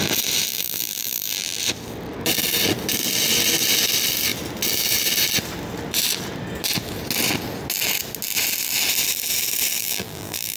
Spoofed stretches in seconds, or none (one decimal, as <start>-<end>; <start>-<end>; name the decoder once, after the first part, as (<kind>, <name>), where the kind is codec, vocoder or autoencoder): 0.5-1.6 (vocoder, BigVGAN v2); 9.8-10.6